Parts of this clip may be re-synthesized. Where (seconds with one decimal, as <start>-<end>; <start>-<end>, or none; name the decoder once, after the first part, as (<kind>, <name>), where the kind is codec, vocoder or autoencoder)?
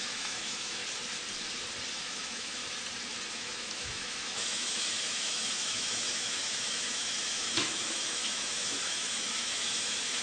0.0-0.8 (autoencoder, DAC-VAE); 1.9-2.6; 3.3-10.2